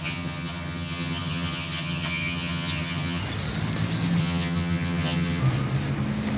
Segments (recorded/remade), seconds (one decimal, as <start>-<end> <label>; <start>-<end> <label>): 0.0-3.2 remade; 3.2-4.2 recorded; 4.2-5.4 remade; 5.4-6.4 recorded